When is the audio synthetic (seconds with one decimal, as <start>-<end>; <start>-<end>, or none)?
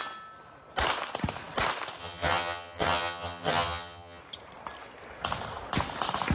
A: 2.0-4.2